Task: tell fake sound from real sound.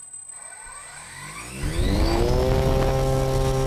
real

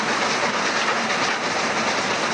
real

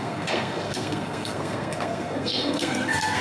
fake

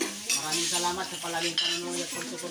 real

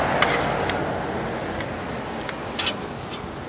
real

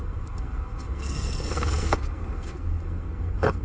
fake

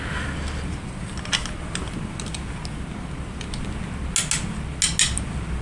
real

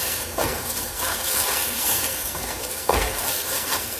fake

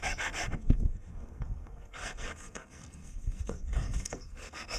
fake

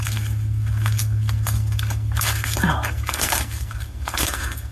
fake